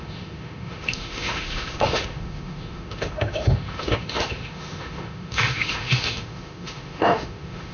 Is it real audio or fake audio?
fake